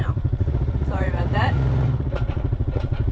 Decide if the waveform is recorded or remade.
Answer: remade